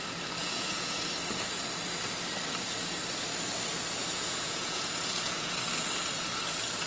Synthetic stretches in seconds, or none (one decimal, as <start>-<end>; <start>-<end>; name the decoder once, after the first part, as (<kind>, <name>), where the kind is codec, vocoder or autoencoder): 0.4-1.0 (vocoder, Vocos); 4.0-5.6